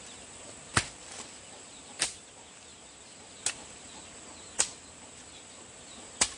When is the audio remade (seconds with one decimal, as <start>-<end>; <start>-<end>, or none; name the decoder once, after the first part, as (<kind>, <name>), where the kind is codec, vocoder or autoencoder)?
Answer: none